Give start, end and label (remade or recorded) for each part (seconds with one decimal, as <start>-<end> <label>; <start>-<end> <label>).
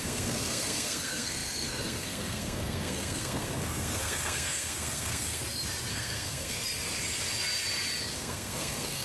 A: 0.0-5.4 remade; 5.4-5.9 recorded; 5.9-6.6 remade; 6.6-8.2 recorded; 8.2-9.0 remade